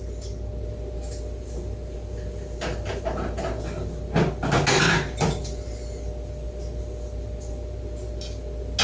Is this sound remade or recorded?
recorded